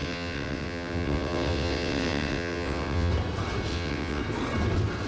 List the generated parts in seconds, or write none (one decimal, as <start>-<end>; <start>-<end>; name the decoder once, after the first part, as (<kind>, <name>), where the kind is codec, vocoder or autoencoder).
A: 0.0-3.1 (vocoder, WaveNeXt); 3.7-4.2